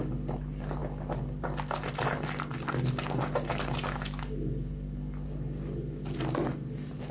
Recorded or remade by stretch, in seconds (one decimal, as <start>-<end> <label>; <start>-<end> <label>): 0.0-7.1 recorded